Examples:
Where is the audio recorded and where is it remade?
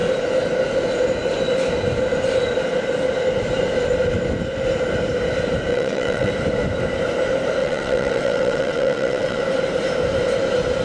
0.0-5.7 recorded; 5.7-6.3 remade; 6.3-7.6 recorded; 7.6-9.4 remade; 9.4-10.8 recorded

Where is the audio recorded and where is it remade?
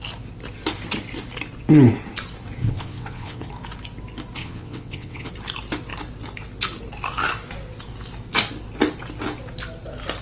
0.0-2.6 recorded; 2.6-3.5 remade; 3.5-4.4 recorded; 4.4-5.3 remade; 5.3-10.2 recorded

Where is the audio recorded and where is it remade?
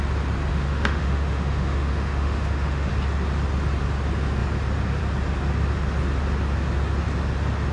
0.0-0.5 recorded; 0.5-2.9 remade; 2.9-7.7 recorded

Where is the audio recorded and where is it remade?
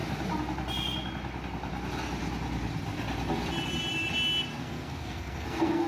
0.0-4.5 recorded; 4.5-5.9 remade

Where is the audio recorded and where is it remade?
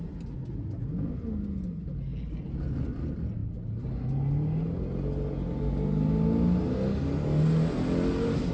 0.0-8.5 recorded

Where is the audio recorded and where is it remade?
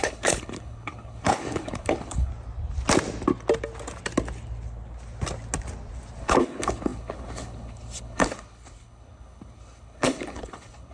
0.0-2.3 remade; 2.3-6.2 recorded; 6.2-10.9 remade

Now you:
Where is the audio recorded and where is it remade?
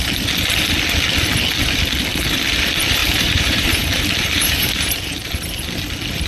0.0-3.0 recorded; 3.0-5.0 remade; 5.0-6.3 recorded